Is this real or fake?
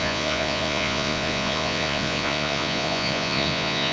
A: fake